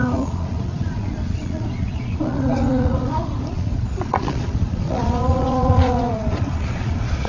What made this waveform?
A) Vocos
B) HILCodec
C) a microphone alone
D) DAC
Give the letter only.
A